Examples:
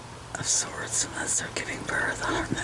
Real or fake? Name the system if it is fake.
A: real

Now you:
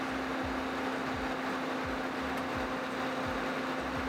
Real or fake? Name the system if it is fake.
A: real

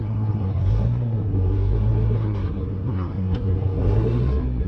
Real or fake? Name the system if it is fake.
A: fake, codec, SNAC